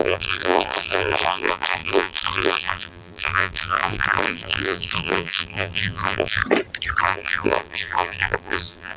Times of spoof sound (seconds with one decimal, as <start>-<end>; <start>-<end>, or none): 0.0-6.4; 7.0-9.0